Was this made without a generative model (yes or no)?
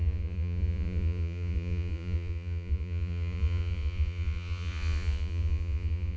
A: no